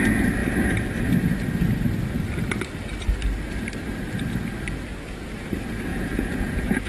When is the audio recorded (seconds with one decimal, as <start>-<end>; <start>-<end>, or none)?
0.0-5.9